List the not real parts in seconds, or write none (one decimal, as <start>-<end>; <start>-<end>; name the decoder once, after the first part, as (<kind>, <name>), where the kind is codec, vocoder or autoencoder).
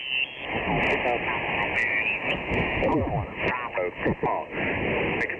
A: 1.8-3.0 (autoencoder, DAC-VAE)